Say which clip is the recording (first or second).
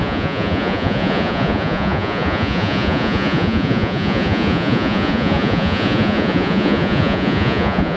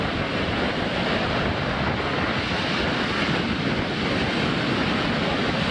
second